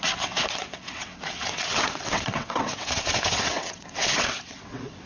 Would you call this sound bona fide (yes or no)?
no